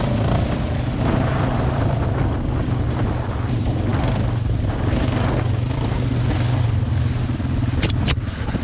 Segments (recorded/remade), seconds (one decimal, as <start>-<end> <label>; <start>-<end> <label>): 0.0-8.6 recorded